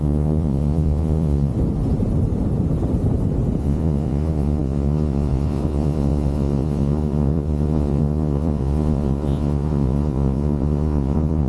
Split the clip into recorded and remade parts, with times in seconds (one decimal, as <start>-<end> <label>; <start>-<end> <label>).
0.0-1.5 remade; 1.5-3.6 recorded; 3.6-11.5 remade